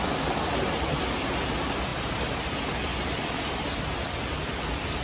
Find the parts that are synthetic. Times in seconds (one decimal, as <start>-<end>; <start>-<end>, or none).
none